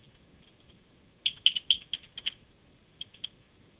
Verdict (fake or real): real